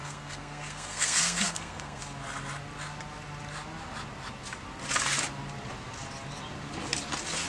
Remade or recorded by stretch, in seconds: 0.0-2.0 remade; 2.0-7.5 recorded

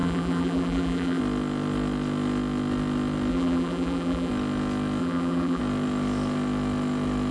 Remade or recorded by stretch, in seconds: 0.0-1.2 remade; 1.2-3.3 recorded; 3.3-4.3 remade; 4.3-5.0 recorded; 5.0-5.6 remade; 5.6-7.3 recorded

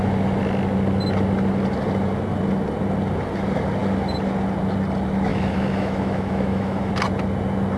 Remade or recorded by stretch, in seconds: 0.0-5.3 recorded; 5.3-6.9 remade; 6.9-7.8 recorded